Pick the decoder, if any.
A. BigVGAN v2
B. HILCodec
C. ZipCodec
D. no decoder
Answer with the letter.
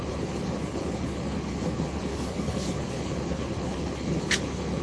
B